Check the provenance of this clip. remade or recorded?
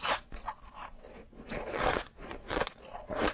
remade